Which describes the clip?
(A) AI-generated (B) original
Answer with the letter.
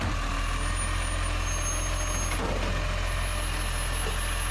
B